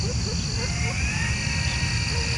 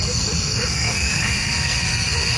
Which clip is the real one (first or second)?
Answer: first